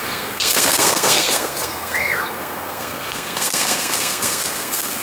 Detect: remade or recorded remade